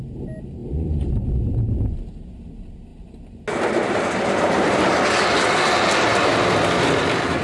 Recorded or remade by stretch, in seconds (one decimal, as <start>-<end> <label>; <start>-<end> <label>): 0.0-0.6 recorded; 0.6-1.1 remade; 1.1-7.4 recorded